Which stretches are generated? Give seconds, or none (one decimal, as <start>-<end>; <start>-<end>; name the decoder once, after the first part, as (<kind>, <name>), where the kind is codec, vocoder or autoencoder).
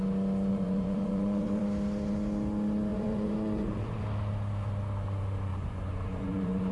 0.5-1.6 (vocoder, Vocos); 2.9-4.0; 5.5-6.7